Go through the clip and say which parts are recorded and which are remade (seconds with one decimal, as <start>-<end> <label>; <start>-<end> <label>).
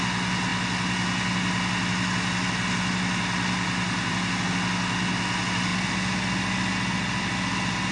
0.0-7.9 recorded